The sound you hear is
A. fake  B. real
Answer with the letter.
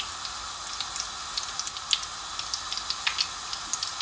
B